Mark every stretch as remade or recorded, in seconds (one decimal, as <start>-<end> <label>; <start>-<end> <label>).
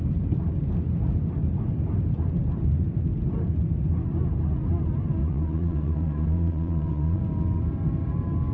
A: 0.0-5.2 recorded; 5.2-7.2 remade; 7.2-8.5 recorded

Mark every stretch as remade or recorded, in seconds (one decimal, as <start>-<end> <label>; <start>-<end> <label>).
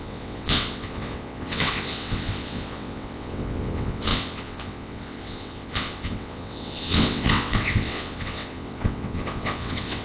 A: 0.0-10.0 remade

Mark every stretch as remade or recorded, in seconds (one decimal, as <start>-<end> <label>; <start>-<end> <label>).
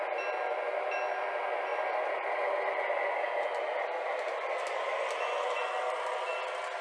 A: 0.0-6.8 recorded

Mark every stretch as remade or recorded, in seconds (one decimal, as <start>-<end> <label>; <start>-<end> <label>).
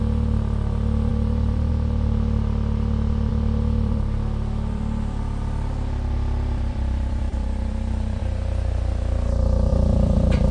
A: 0.0-1.1 recorded; 1.1-1.7 remade; 1.7-3.3 recorded; 3.3-8.2 remade; 8.2-9.7 recorded; 9.7-10.5 remade